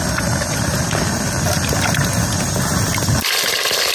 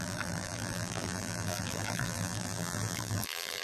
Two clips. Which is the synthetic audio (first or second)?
second